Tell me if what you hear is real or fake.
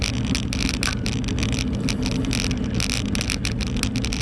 real